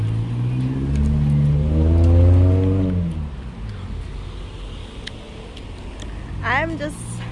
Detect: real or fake real